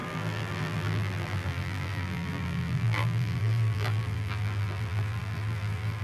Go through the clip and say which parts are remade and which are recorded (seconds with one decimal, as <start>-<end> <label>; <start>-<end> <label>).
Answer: 0.0-6.0 remade